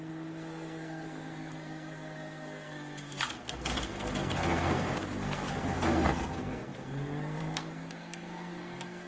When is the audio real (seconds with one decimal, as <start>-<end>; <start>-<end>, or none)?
none